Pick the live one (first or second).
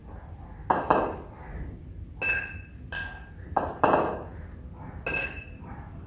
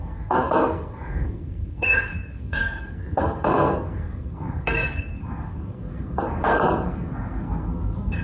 first